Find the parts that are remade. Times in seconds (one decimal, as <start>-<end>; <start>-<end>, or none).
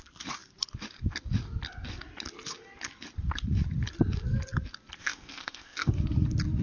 5.0-5.9